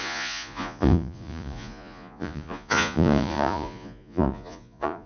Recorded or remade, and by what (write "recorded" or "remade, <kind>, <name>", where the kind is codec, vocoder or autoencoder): remade, vocoder, Vocos